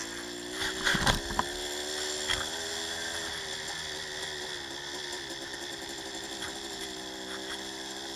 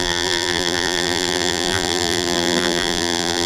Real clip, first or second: first